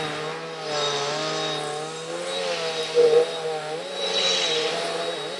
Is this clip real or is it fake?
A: real